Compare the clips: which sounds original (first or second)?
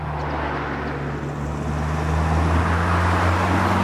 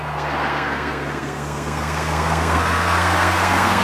first